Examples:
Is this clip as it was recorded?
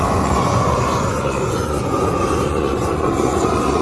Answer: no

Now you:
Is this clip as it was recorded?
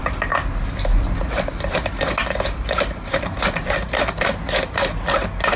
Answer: yes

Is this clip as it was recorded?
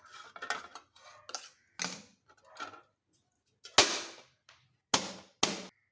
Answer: yes